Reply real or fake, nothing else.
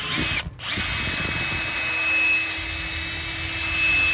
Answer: real